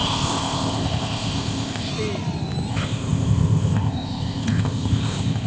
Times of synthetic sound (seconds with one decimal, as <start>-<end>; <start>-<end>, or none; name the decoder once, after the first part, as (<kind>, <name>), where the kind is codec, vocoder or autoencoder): 0.0-1.9 (codec, ZipCodec); 2.7-5.5